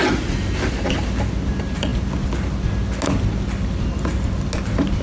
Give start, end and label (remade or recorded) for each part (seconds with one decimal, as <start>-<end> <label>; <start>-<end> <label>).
0.0-5.0 recorded